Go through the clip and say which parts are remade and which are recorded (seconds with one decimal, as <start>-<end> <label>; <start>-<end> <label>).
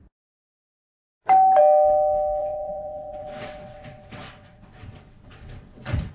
0.0-2.4 recorded; 2.4-6.1 remade